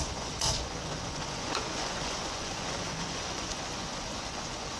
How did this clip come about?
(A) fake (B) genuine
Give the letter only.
A